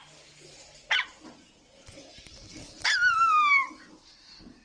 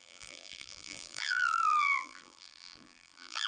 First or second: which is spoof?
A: second